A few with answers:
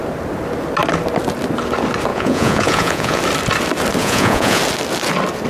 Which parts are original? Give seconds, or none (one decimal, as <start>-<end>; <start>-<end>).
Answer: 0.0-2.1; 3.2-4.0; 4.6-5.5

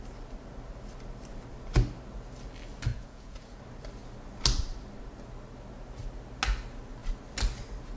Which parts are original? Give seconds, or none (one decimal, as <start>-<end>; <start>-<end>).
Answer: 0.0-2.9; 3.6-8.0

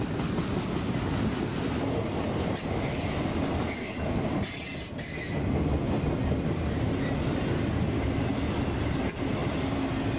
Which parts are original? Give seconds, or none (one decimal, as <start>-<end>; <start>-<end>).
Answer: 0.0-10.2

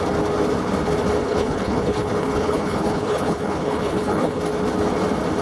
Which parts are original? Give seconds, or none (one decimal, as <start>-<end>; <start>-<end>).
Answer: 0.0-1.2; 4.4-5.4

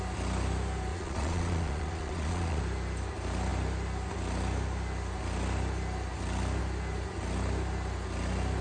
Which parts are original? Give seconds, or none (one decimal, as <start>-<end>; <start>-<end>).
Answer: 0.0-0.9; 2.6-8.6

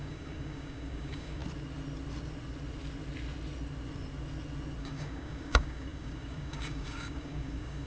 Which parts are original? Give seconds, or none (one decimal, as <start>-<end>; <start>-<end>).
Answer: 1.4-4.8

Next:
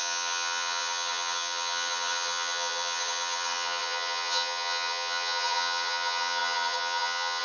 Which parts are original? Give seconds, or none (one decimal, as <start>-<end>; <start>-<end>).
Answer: none

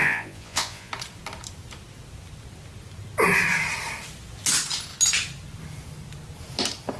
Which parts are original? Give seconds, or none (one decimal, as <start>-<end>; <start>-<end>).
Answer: 0.9-7.0